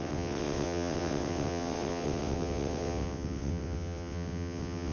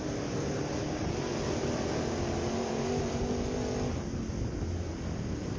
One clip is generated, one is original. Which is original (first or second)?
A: second